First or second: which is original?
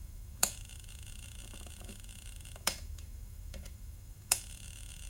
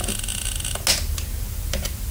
second